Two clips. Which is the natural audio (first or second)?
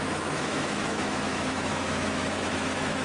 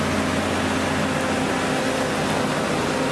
second